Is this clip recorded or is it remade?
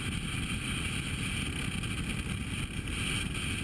recorded